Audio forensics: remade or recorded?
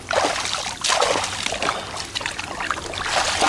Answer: recorded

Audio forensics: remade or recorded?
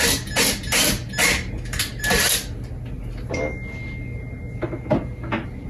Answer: recorded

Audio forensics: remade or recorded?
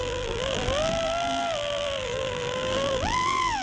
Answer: remade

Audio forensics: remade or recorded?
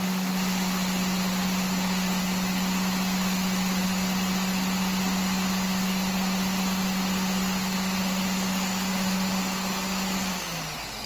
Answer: recorded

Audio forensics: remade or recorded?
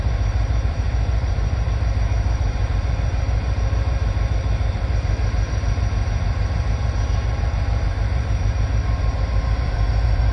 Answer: remade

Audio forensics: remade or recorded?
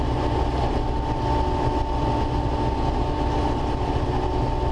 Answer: recorded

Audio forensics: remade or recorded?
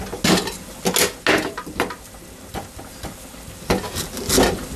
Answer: recorded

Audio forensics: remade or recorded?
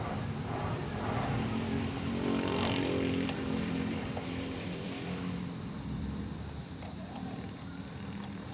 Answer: remade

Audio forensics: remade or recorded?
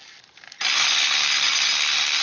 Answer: recorded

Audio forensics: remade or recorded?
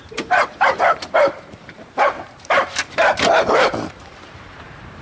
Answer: remade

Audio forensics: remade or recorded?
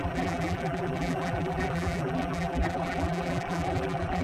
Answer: remade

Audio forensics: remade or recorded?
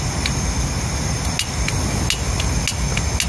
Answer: recorded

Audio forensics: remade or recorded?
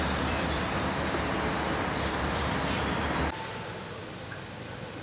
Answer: remade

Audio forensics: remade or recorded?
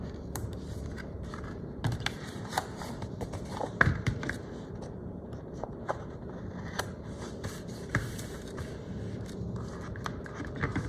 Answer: remade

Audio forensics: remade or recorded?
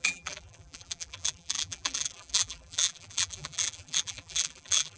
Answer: remade